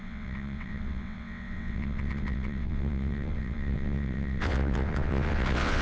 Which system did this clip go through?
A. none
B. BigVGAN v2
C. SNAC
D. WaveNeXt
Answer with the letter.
D